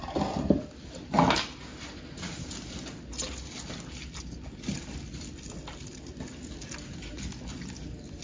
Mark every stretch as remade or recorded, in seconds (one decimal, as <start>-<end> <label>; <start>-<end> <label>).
0.0-8.2 recorded